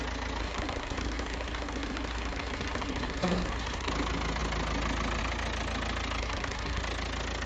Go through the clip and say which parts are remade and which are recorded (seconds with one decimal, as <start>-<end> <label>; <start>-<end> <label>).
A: 0.0-0.4 recorded; 0.4-3.9 remade; 3.9-6.2 recorded; 6.2-6.8 remade; 6.8-7.5 recorded